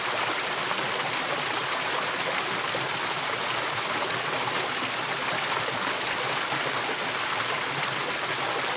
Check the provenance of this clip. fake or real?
real